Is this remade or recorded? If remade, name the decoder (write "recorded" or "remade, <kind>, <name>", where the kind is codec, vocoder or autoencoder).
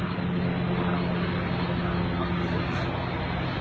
recorded